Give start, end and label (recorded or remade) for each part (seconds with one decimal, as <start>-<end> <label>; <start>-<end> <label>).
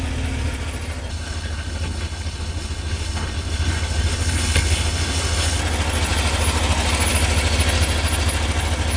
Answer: 0.0-1.1 recorded; 1.1-5.6 remade; 5.6-9.0 recorded